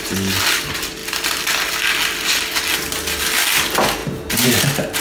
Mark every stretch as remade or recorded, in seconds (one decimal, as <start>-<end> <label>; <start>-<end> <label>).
0.0-5.0 recorded